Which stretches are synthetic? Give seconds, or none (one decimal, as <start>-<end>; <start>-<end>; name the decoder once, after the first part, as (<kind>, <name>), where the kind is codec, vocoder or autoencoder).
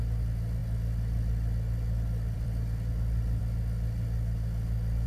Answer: 0.6-3.4 (vocoder, BigVGAN v2)